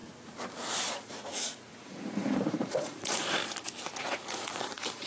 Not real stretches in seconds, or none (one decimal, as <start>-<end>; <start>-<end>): 0.9-3.4; 4.0-5.1